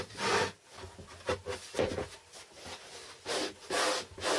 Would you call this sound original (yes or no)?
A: yes